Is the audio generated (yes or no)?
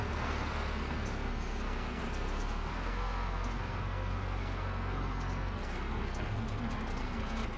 yes